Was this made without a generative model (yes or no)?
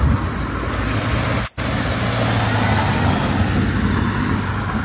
yes